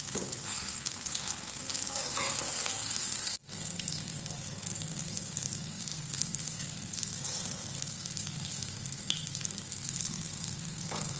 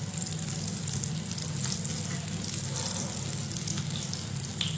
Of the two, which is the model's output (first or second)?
first